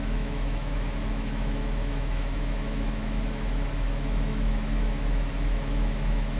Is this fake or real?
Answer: fake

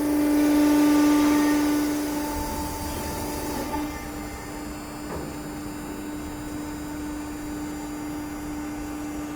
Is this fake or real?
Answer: real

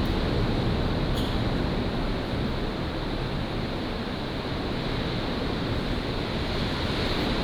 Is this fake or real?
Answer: real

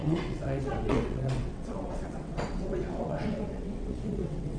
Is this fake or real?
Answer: fake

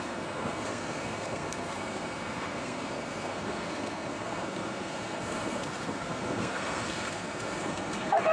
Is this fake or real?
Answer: fake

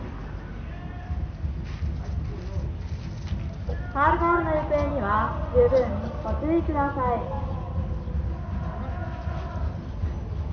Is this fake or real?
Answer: real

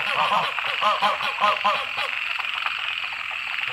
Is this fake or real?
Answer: real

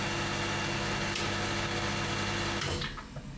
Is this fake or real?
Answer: real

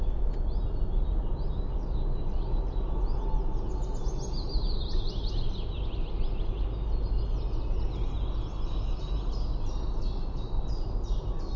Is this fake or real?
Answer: real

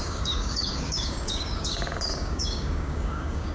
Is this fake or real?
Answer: fake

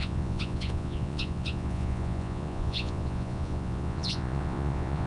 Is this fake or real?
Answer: fake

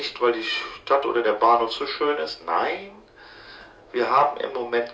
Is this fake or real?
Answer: fake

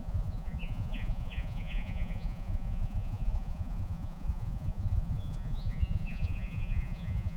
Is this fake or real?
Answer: fake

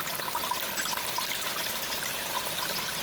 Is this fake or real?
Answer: real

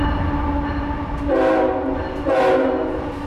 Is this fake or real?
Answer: real